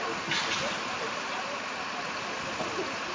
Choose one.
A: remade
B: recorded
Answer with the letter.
B